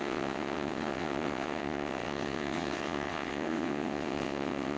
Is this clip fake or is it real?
fake